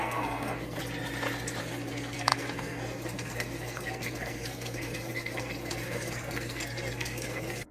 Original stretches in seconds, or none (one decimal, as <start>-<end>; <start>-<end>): 0.8-1.6